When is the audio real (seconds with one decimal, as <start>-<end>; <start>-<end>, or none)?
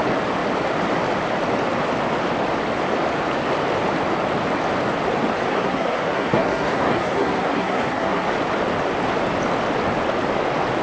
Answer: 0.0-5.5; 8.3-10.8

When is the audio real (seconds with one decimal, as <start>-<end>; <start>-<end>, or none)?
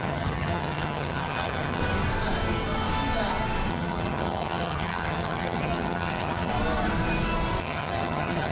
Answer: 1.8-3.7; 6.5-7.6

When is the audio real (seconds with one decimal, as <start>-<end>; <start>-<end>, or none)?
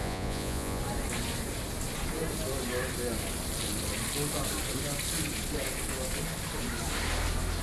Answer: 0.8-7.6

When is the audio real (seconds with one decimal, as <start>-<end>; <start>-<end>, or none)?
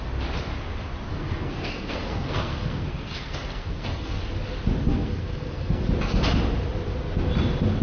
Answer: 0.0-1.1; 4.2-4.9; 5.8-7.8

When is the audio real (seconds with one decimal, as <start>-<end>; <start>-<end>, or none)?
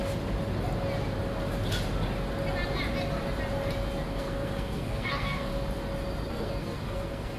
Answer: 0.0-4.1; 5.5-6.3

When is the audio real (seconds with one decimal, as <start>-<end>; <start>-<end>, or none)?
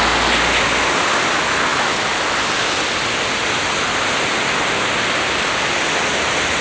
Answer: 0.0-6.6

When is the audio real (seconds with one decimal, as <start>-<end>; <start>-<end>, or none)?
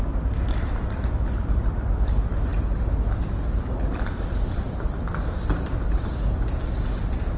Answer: 2.5-3.7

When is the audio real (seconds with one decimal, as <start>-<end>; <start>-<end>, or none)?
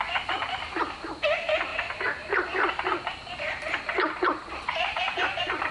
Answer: 1.7-4.2